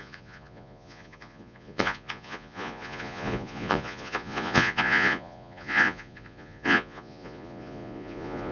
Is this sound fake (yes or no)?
yes